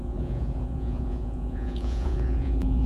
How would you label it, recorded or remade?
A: remade